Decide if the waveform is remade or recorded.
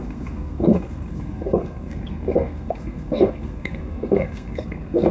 remade